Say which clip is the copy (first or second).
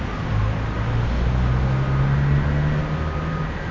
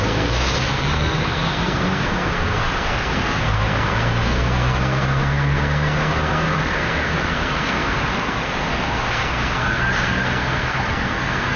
second